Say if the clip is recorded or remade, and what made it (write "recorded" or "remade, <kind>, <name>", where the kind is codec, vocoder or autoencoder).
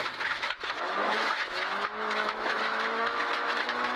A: remade, autoencoder, DAC-VAE